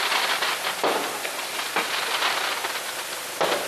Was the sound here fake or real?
real